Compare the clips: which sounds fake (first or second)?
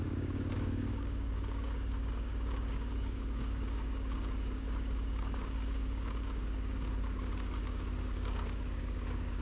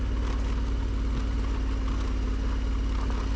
first